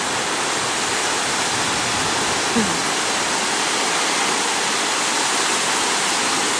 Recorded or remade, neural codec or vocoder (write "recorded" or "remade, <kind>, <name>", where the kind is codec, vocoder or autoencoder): recorded